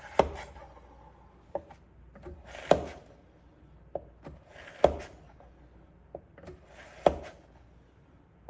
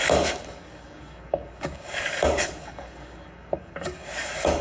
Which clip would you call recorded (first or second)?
first